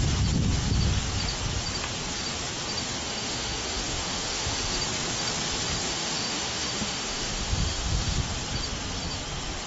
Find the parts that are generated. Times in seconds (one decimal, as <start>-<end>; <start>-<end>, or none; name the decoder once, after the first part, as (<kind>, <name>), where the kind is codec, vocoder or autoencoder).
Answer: 3.1-4.8 (autoencoder, DAC-VAE); 5.8-8.2